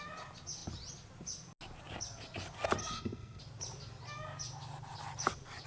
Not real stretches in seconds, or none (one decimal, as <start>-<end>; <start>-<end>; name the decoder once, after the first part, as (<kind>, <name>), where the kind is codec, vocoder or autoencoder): 2.8-3.4 (codec, SNAC)